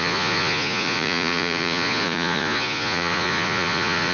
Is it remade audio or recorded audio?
remade